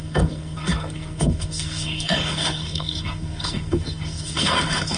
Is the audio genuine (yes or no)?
no